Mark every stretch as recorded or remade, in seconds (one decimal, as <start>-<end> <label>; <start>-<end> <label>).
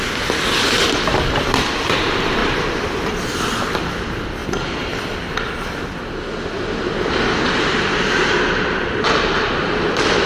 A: 0.0-2.4 recorded; 2.4-3.6 remade; 3.6-4.4 recorded; 4.4-5.8 remade; 5.8-9.6 recorded; 9.6-10.3 remade